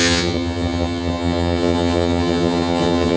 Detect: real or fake fake